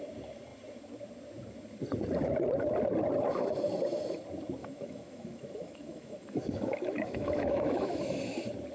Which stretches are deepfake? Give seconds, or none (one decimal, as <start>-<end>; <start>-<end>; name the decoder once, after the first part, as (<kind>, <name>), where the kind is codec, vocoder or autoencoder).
4.6-8.2 (autoencoder, DAC-VAE)